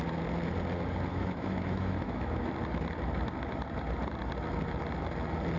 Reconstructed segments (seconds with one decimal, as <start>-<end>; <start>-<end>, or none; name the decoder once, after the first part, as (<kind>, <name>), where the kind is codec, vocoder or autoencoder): 1.1-2.5 (autoencoder, DAC-VAE)

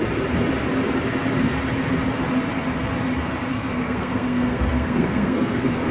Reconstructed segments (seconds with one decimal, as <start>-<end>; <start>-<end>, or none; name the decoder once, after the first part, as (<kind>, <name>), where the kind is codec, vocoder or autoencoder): 3.5-5.9 (codec, SNAC)